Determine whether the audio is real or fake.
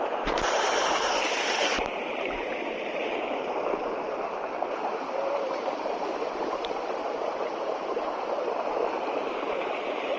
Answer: fake